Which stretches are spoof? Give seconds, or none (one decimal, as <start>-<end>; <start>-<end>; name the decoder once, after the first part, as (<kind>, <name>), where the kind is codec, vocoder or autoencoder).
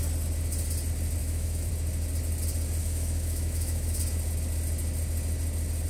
1.2-1.7 (autoencoder, DAC-VAE); 2.8-4.0